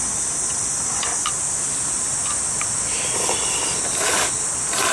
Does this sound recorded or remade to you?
recorded